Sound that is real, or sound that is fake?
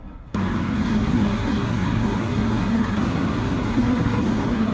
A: fake